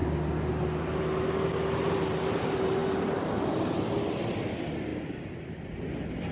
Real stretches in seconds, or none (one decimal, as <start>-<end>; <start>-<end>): 0.0-6.3